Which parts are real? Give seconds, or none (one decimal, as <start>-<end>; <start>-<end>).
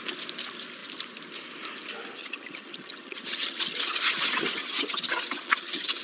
0.0-2.2